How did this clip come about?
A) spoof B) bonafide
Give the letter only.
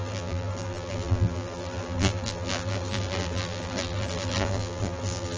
A